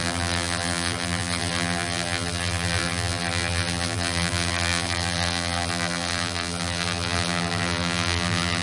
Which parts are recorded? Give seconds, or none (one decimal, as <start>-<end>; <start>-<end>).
none